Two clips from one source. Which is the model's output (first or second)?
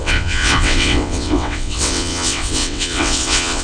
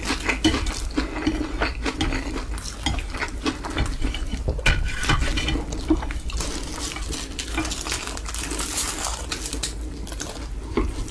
first